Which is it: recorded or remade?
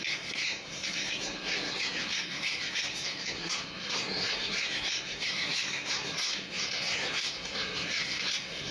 remade